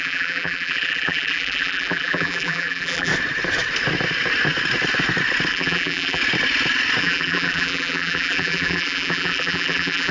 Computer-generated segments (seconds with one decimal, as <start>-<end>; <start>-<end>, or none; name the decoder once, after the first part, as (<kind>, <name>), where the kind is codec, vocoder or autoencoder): 0.0-3.1 (vocoder, BigVGAN v2); 5.5-6.2; 7.0-10.1